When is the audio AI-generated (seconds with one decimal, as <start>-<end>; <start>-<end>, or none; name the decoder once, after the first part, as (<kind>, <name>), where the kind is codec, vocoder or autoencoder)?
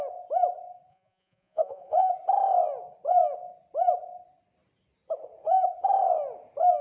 0.9-2.1 (vocoder, Vocos)